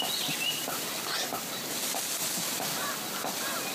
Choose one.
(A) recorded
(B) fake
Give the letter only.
A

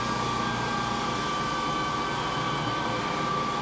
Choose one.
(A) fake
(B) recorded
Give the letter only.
B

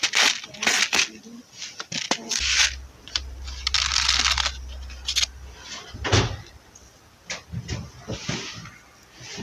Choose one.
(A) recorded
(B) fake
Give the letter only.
A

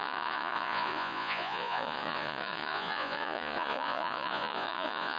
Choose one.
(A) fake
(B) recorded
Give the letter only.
A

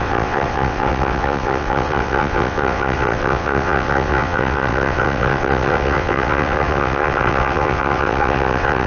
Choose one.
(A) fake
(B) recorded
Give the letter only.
A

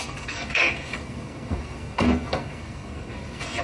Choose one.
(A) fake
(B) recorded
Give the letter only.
A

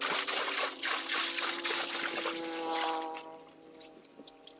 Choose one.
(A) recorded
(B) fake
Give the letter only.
A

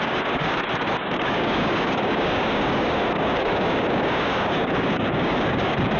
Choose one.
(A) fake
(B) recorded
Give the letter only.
A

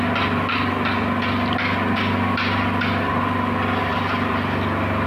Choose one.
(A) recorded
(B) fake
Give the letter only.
A